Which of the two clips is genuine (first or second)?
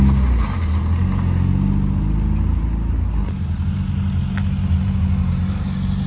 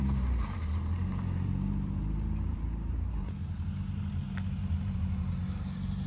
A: first